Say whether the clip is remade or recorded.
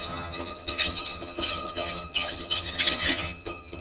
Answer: remade